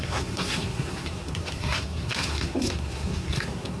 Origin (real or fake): fake